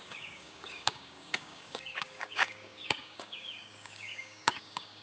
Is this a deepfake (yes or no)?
yes